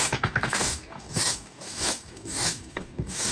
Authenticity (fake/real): fake